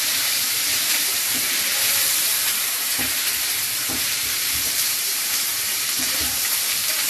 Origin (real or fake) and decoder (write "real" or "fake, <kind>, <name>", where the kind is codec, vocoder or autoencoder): fake, vocoder, BigVGAN v2